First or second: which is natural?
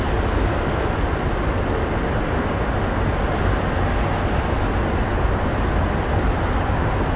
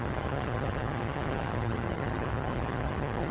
first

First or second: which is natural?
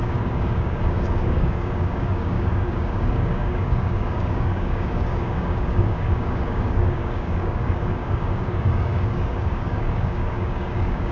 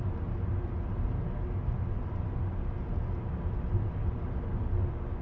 second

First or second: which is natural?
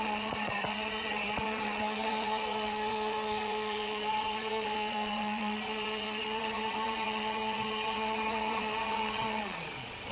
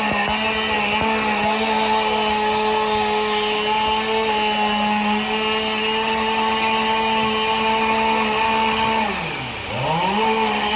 second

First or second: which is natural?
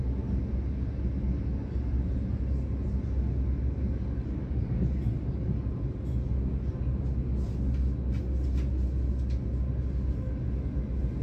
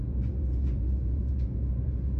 first